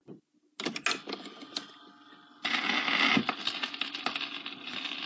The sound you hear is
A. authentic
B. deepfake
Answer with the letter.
A